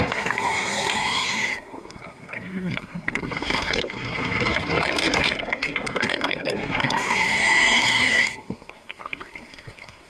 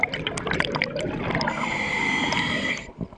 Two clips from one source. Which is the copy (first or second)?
first